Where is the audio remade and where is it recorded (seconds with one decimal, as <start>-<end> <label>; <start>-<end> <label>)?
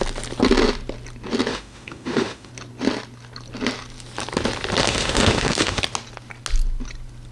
0.0-1.5 recorded; 1.5-2.5 remade; 2.5-4.8 recorded; 4.8-5.8 remade; 5.8-7.3 recorded